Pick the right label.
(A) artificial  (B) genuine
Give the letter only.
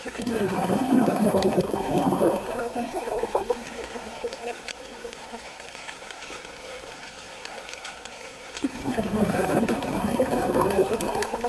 A